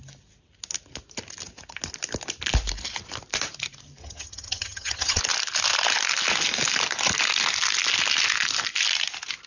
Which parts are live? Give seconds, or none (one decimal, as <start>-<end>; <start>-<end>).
0.0-4.0; 5.2-9.5

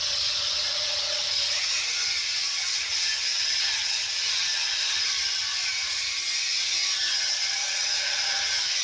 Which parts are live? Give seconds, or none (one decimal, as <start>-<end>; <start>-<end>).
none

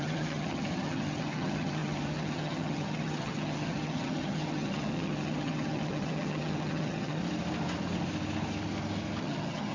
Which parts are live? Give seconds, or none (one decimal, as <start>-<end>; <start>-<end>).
7.2-9.2

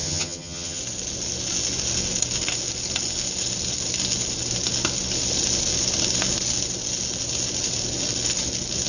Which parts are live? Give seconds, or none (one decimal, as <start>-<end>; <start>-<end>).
0.8-8.9

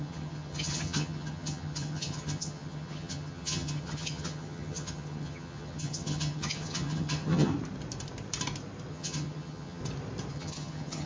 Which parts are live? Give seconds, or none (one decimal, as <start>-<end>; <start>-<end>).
7.5-8.9; 9.8-10.3

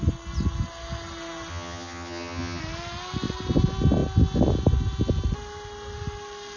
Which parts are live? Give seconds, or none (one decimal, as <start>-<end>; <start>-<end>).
0.0-1.5; 2.6-6.6

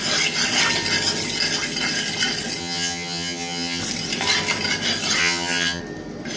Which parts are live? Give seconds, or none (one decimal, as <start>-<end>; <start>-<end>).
0.0-2.6; 3.8-5.2; 5.8-6.4

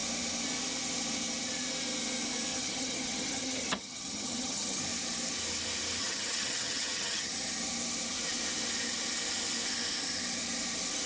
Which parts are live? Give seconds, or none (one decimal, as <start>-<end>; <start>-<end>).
0.0-2.5; 4.8-6.0; 7.3-11.1